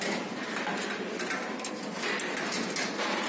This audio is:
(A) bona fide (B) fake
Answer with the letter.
A